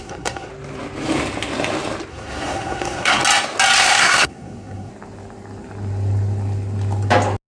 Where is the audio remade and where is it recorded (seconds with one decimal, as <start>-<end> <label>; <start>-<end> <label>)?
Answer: 0.0-0.5 remade; 0.5-2.1 recorded; 2.1-3.2 remade; 3.2-3.8 recorded; 3.8-4.9 remade; 4.9-7.5 recorded

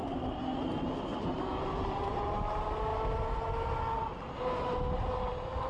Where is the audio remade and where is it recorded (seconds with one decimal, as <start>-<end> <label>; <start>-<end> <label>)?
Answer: 0.0-5.7 recorded

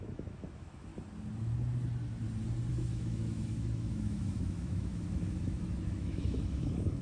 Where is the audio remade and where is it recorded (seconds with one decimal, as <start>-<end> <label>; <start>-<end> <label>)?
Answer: 0.0-0.9 remade; 0.9-2.7 recorded; 2.7-7.0 remade

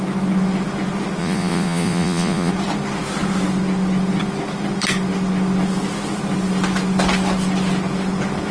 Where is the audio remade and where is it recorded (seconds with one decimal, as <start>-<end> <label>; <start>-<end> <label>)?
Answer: 0.0-1.2 recorded; 1.2-2.5 remade; 2.5-8.5 recorded

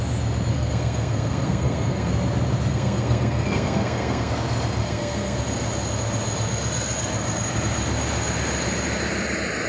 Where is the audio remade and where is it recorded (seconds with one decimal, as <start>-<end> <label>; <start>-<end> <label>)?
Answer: 0.0-0.5 recorded; 0.5-2.1 remade; 2.1-2.7 recorded; 2.7-4.3 remade; 4.3-4.8 recorded; 4.8-5.4 remade; 5.4-9.7 recorded

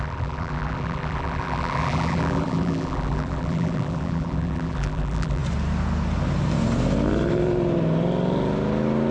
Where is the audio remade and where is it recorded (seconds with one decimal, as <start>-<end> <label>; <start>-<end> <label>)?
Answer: 0.0-5.4 remade; 5.4-9.1 recorded

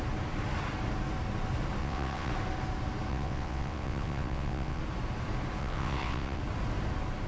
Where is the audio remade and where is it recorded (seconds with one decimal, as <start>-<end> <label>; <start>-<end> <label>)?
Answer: 0.0-1.8 recorded; 1.8-2.3 remade; 2.3-3.1 recorded; 3.1-4.8 remade; 4.8-5.6 recorded; 5.6-6.4 remade; 6.4-7.3 recorded

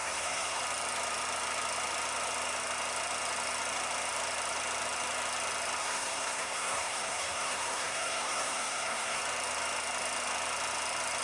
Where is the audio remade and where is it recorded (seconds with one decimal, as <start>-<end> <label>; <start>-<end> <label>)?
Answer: 0.0-0.6 remade; 0.6-5.8 recorded; 5.8-9.2 remade; 9.2-11.2 recorded